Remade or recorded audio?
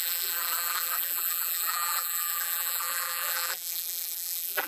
remade